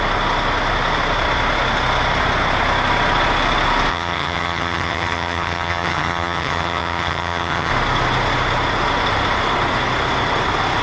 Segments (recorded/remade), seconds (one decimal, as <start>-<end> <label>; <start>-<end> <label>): 0.0-3.9 recorded; 3.9-7.7 remade; 7.7-10.8 recorded